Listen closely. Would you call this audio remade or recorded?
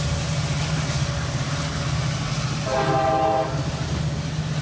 recorded